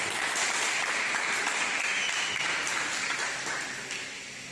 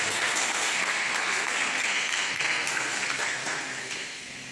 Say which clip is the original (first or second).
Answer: first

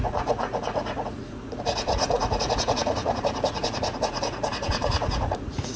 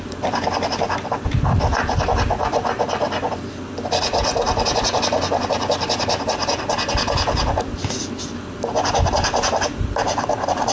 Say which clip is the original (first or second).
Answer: second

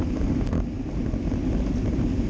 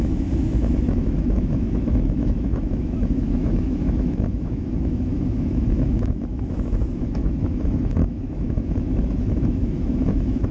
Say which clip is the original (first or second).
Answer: first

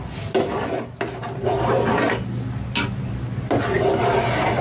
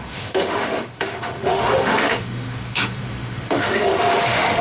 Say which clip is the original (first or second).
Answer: first